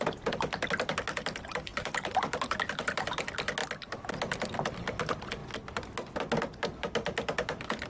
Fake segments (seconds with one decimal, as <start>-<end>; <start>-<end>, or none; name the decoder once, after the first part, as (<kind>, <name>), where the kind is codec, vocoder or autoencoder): 1.7-2.6 (vocoder, BigVGAN v2)